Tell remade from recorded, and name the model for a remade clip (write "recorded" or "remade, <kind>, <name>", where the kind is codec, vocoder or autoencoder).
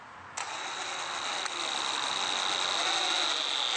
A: recorded